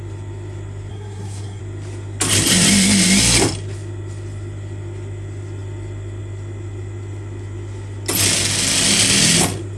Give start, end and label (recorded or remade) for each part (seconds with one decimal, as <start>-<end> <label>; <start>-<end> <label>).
0.0-0.9 recorded; 0.9-1.6 remade; 1.6-9.8 recorded